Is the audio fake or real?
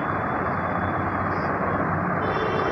real